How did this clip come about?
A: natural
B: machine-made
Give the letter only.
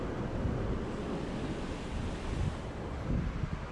A